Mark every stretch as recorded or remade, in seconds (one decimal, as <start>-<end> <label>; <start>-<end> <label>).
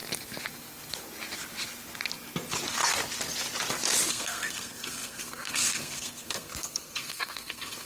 0.0-4.1 recorded; 4.1-7.9 remade